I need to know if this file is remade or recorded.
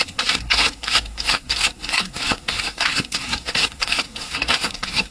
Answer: remade